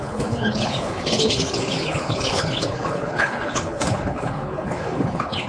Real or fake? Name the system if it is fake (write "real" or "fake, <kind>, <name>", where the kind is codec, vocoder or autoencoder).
fake, codec, HILCodec